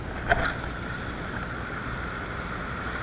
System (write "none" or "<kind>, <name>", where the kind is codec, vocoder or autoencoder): none